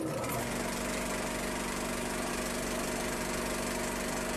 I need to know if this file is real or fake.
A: real